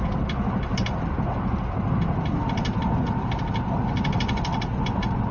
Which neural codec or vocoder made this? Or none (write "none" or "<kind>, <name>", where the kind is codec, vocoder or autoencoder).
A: none